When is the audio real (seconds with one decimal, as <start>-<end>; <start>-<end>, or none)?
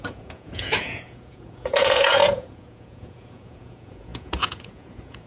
none